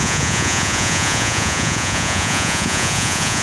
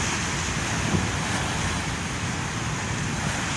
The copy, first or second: first